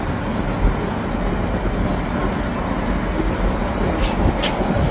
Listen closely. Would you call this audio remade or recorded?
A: recorded